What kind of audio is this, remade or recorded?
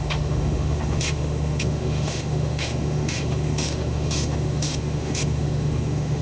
remade